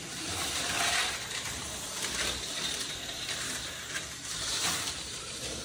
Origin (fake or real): fake